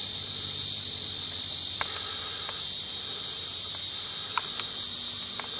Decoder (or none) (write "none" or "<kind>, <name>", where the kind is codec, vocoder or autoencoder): none